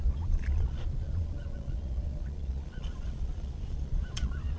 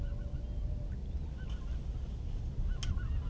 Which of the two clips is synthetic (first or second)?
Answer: first